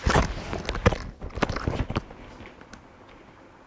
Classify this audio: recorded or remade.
recorded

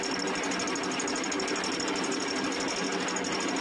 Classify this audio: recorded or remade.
recorded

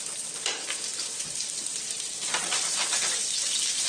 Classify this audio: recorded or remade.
remade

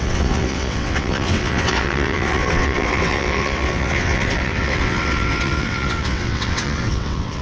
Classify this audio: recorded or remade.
remade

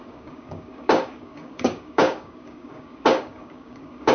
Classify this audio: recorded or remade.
remade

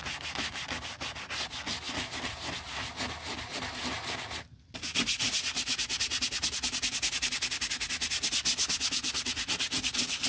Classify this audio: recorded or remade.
recorded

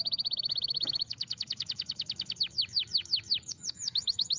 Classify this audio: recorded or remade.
remade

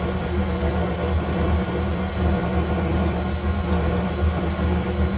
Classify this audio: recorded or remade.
recorded